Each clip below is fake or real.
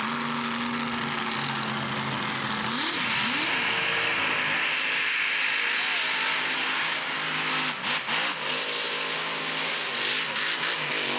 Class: real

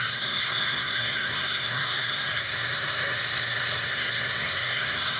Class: fake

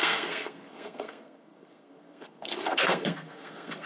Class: fake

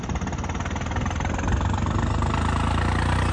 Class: real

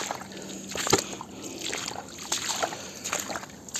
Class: real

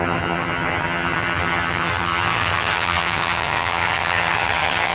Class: fake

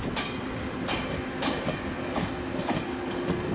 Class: real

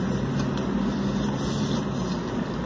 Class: real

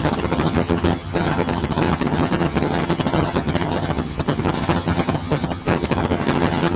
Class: fake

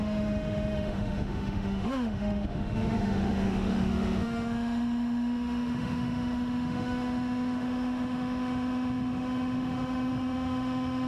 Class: fake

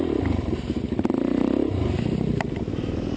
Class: real